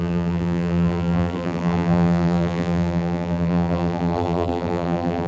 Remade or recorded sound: remade